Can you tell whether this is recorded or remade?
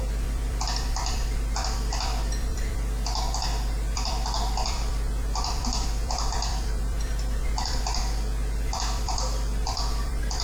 remade